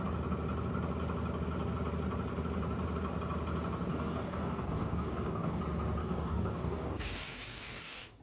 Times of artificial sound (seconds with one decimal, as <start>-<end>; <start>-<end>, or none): 3.9-5.6; 6.0-8.2